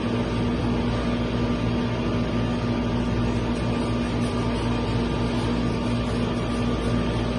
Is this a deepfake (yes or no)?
no